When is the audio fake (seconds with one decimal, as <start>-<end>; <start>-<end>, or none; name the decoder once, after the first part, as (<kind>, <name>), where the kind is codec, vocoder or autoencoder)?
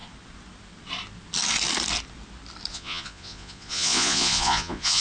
2.7-5.0 (vocoder, Vocos)